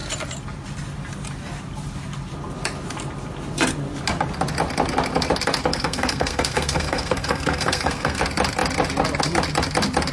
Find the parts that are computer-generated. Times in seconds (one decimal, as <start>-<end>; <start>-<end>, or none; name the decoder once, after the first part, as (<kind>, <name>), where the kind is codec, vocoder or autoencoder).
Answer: 5.7-8.2 (codec, SNAC)